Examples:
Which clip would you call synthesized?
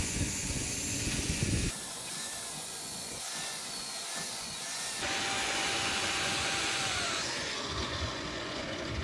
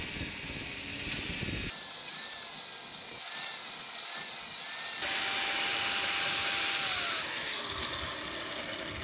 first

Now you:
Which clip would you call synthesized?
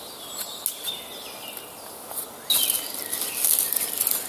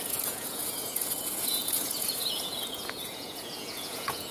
second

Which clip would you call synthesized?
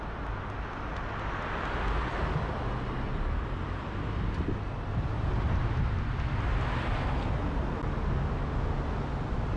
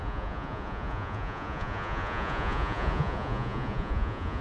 second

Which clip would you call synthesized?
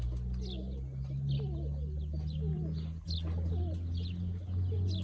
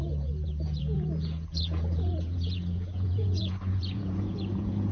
second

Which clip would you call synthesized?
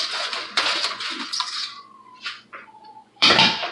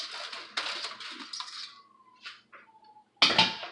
first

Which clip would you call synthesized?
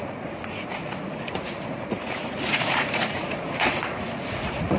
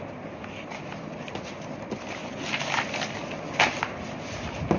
first